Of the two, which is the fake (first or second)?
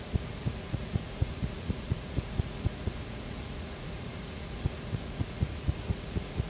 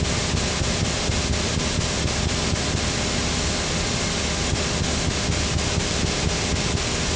first